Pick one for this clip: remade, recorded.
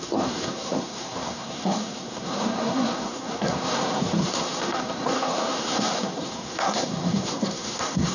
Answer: remade